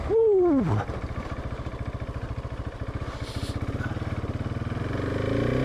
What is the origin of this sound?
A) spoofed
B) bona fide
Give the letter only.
B